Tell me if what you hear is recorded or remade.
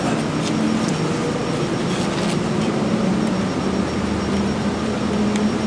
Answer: recorded